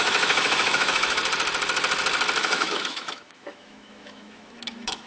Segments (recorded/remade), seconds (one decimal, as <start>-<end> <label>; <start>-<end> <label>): 0.0-1.2 remade; 1.2-2.4 recorded; 2.4-5.1 remade